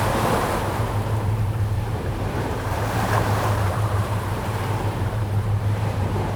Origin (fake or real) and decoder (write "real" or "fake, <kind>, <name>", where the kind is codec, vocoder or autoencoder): fake, vocoder, BigVGAN v2